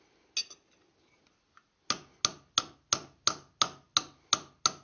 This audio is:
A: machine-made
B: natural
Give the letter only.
B